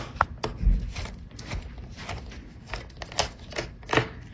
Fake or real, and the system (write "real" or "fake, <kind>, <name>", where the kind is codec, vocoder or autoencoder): real